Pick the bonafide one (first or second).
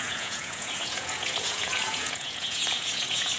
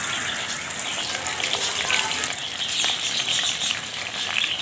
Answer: second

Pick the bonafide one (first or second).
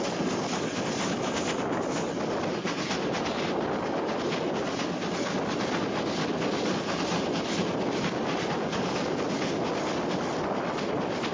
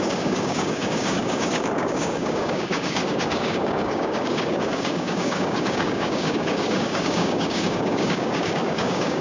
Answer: first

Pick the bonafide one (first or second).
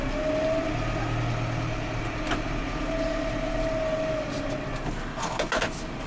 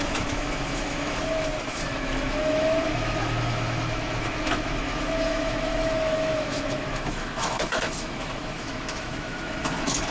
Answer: first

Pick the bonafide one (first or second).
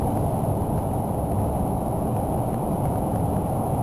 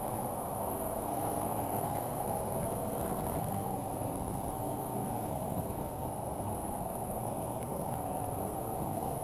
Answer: first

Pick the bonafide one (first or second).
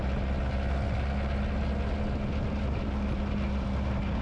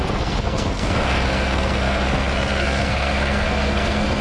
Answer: first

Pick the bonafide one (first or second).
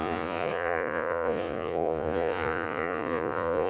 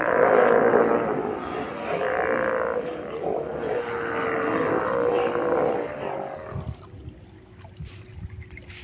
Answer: second